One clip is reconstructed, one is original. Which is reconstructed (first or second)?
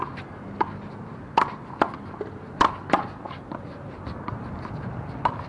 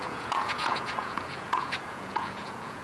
second